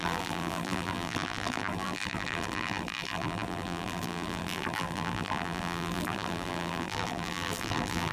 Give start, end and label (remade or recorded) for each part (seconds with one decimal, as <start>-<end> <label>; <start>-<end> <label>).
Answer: 0.0-8.1 remade